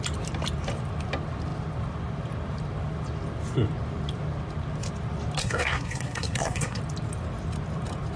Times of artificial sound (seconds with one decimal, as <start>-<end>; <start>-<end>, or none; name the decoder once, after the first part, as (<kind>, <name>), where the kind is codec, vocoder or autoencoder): 5.4-6.8 (codec, SNAC)

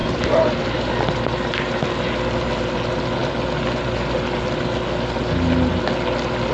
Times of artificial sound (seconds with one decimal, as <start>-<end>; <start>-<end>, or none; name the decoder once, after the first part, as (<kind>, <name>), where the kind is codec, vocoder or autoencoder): none

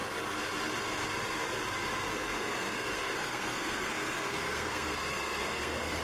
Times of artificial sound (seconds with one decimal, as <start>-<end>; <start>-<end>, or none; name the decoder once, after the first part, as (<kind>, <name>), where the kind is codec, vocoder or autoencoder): 2.1-6.0 (codec, SNAC)

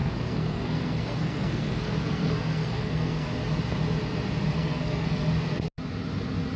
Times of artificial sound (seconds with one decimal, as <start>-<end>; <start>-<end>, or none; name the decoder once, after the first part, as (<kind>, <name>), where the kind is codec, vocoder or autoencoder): 0.0-3.3 (codec, SNAC); 4.5-5.3

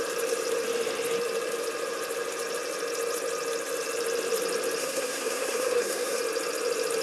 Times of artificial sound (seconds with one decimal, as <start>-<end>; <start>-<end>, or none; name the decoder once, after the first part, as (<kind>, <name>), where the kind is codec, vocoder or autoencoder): 4.8-6.2 (codec, SNAC)